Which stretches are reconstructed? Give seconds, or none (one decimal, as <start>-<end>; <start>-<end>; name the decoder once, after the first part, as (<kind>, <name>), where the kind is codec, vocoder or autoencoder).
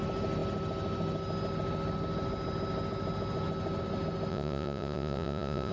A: 4.3-5.7 (vocoder, Vocos)